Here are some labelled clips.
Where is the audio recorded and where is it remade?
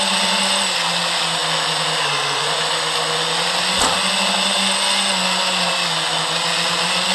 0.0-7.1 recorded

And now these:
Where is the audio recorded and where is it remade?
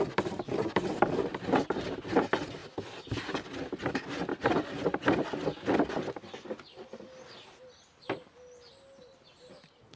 0.0-10.0 recorded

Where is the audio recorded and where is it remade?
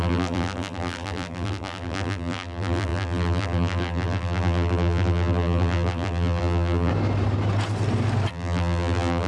0.0-6.9 remade; 6.9-8.3 recorded; 8.3-9.3 remade